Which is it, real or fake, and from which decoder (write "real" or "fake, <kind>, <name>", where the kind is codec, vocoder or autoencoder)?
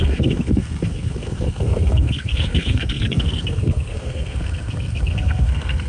fake, codec, SNAC